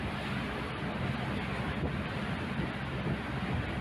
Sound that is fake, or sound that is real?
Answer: real